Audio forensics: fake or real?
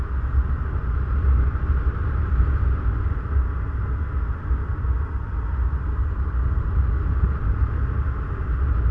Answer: real